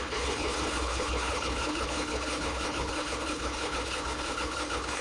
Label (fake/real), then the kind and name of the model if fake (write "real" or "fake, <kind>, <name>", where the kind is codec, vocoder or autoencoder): fake, codec, HILCodec